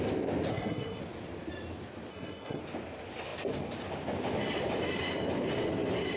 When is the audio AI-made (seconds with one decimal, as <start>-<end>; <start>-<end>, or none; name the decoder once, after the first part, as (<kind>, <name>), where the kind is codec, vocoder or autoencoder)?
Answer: 0.5-1.0 (codec, SNAC); 2.1-2.6